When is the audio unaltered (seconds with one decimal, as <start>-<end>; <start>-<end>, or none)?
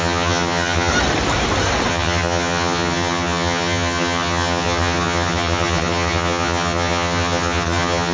0.9-1.9